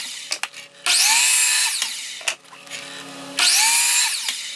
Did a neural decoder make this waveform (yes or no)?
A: no